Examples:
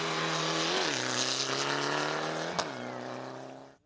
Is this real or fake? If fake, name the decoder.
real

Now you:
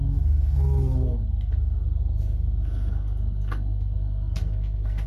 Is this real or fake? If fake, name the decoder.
fake, codec, SNAC